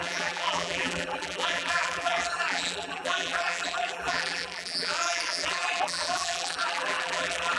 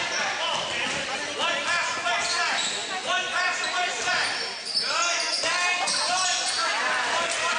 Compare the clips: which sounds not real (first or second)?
first